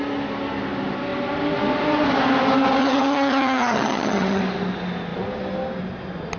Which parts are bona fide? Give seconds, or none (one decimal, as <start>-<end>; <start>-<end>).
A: 0.0-2.8; 4.4-6.4